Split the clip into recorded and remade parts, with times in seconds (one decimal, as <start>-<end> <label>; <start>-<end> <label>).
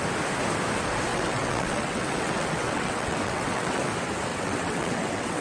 0.0-1.1 recorded; 1.1-3.9 remade; 3.9-4.3 recorded; 4.3-5.4 remade